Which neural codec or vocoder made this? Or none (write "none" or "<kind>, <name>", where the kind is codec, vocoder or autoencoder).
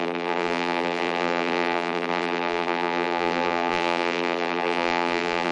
vocoder, BigVGAN v2